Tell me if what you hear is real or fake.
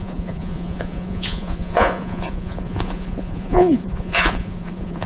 fake